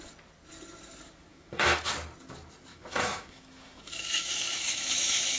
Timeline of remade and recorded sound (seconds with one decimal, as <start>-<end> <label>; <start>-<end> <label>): 0.0-1.3 recorded; 1.3-1.9 remade; 1.9-2.7 recorded; 2.7-5.4 remade